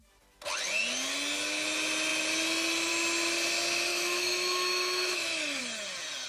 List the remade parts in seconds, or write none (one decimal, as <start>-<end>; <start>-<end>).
3.9-5.6